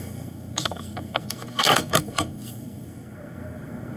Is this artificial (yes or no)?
yes